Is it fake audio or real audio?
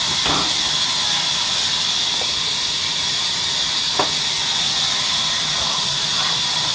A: real